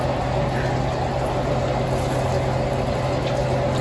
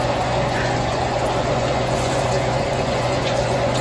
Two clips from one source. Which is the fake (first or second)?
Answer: second